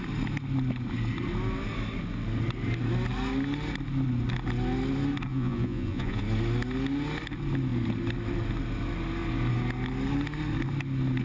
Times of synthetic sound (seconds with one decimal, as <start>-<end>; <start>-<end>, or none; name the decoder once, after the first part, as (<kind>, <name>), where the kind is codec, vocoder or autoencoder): 5.3-6.2 (vocoder, Vocos)